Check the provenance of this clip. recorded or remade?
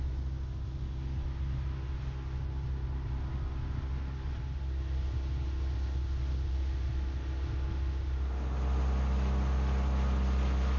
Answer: recorded